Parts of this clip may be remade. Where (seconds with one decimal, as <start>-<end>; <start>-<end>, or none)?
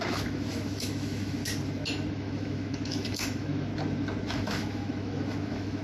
0.0-1.4; 2.1-3.7; 4.3-5.8